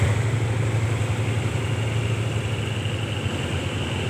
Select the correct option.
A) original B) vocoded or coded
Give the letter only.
A